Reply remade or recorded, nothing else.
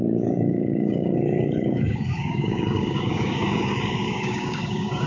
remade